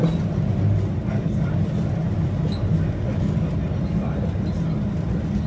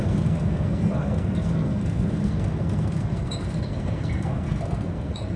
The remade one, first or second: second